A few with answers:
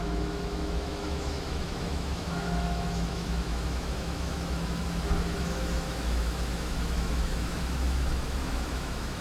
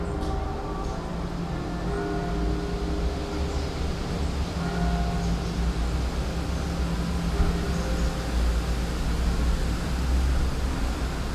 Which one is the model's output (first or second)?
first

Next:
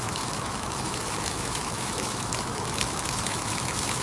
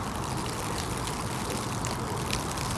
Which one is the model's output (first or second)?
first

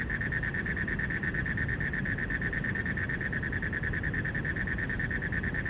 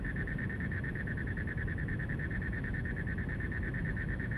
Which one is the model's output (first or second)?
second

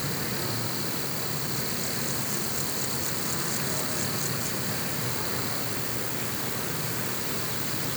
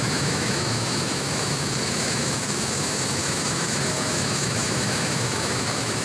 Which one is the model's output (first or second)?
second